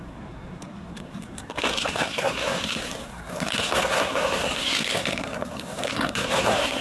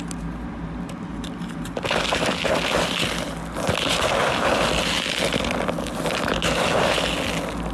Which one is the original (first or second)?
second